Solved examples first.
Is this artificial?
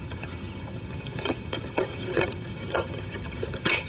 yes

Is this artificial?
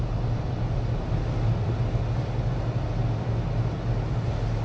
no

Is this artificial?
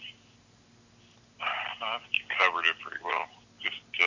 no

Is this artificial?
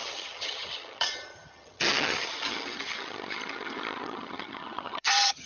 yes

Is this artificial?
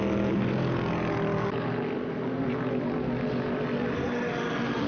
no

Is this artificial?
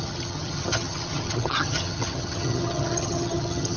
yes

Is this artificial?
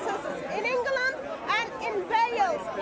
no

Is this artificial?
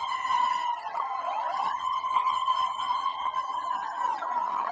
yes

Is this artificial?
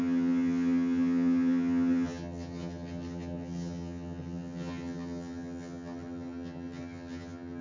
yes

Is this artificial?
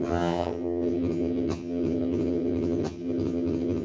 yes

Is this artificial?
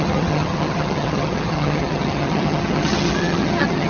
yes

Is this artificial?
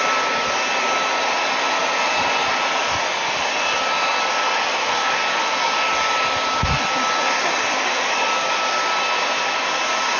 no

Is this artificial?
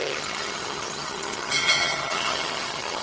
yes